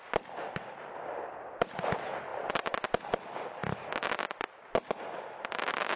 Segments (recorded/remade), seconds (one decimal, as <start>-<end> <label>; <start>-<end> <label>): 0.0-6.0 recorded